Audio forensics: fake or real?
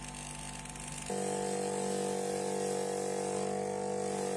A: real